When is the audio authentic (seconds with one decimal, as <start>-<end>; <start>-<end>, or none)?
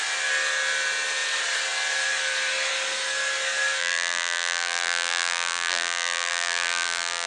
0.0-3.8